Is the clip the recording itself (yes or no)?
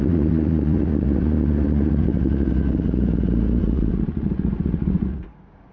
no